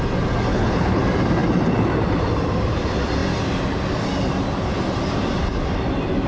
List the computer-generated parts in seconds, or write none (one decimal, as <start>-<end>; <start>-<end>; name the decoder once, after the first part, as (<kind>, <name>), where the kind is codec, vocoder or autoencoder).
0.5-1.0 (codec, HILCodec)